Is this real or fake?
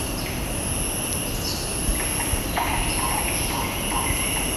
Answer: real